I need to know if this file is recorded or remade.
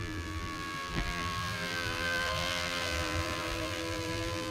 remade